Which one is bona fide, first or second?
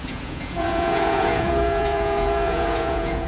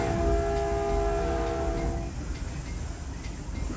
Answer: second